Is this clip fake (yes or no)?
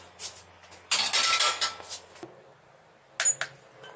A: no